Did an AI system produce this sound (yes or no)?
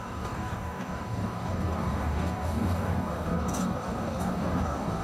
yes